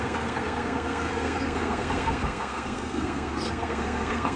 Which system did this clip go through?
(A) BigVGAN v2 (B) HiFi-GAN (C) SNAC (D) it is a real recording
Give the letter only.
C